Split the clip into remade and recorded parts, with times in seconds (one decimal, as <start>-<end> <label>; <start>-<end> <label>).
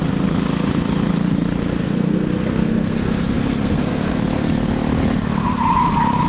0.0-1.8 recorded; 1.8-4.2 remade; 4.2-6.3 recorded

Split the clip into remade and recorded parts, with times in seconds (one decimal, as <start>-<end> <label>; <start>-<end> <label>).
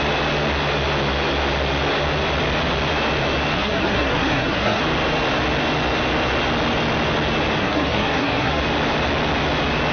0.0-3.5 recorded; 3.5-4.8 remade; 4.8-7.6 recorded; 7.6-8.6 remade; 8.6-9.9 recorded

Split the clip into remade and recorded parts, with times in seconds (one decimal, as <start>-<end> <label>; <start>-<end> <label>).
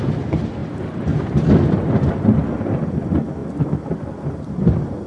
0.0-5.1 recorded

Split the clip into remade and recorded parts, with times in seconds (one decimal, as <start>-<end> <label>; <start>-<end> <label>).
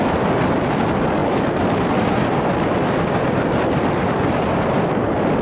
0.0-5.4 recorded